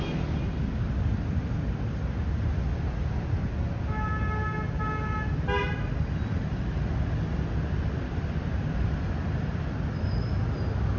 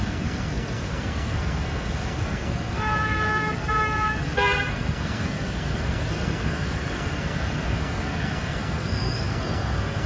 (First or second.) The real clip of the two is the first